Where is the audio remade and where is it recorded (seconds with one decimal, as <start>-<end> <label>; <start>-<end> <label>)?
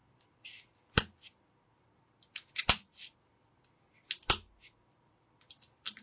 0.0-6.0 recorded